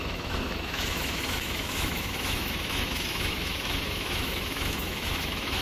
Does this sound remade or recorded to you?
remade